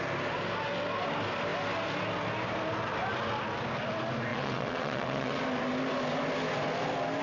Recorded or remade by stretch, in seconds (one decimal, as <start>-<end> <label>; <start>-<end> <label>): 0.0-4.3 recorded; 4.3-5.4 remade; 5.4-7.2 recorded